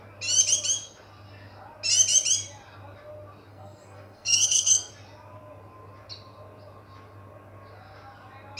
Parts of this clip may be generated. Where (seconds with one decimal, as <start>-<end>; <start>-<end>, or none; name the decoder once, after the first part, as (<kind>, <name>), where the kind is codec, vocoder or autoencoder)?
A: 3.5-4.9 (codec, SNAC)